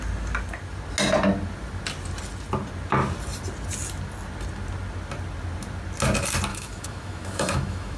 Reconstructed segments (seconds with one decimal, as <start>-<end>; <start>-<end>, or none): 6.5-8.0